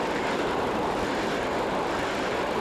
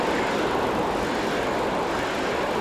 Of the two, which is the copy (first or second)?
first